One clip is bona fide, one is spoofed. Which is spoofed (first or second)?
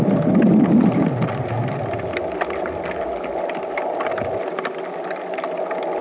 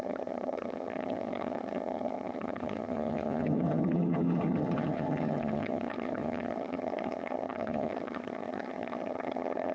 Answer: second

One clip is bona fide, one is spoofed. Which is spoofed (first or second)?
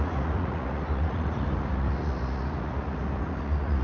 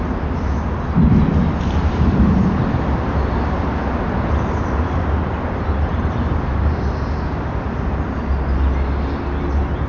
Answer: first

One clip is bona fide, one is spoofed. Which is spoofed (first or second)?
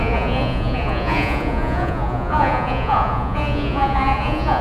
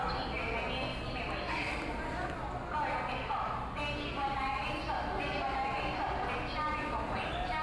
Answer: first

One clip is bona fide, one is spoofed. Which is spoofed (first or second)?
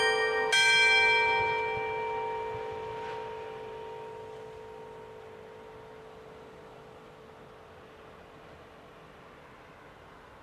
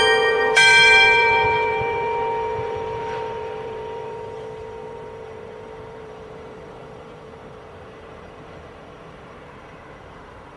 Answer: second